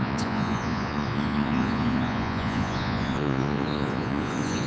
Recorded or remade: remade